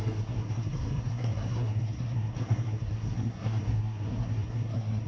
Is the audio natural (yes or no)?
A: no